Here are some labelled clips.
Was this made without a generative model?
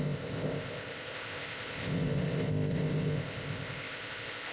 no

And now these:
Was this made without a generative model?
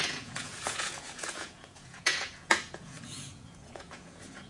no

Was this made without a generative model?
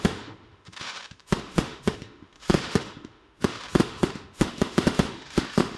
no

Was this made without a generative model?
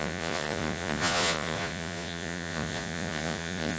no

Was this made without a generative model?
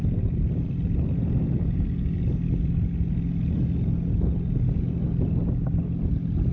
yes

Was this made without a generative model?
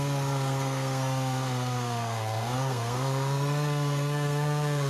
no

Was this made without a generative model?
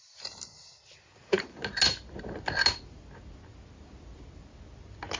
yes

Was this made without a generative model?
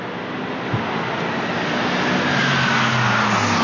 yes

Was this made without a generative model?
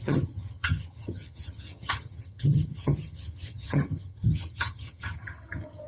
no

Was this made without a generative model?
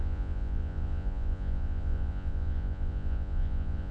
no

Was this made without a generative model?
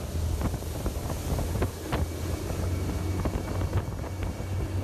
yes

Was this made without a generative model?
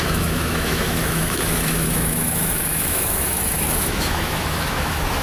no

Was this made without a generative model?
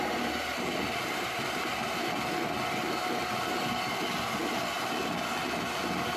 yes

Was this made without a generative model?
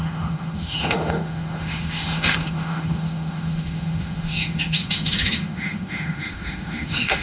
no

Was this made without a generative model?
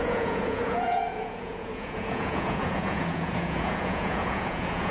no